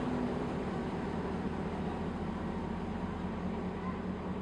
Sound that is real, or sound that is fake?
real